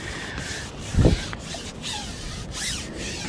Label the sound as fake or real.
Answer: real